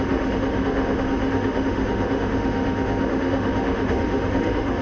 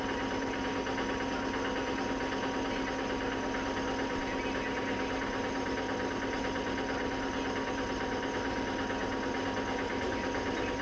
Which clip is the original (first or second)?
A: second